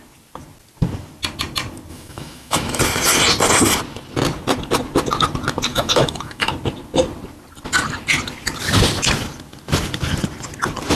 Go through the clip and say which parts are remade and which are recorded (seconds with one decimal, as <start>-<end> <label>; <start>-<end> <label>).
0.0-1.9 recorded; 1.9-2.8 remade; 2.8-5.7 recorded; 5.7-6.5 remade; 6.5-11.0 recorded